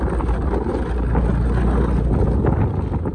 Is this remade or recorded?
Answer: recorded